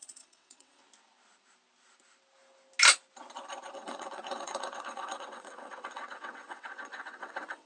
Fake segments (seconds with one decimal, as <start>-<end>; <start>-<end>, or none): 0.0-0.8; 3.7-7.7